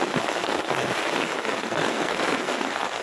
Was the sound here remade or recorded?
remade